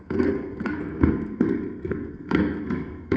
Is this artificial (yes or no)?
yes